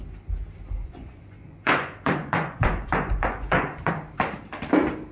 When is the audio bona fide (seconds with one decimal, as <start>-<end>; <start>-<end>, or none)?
0.0-0.8; 3.9-5.1